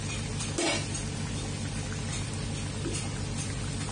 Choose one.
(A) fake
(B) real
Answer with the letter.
B